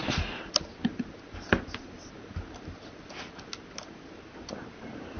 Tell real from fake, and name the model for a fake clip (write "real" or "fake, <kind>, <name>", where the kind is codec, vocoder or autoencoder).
real